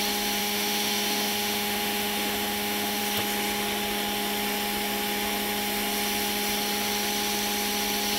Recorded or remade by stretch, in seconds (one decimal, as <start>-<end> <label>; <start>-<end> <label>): 0.0-0.4 recorded; 0.4-3.0 remade; 3.0-8.2 recorded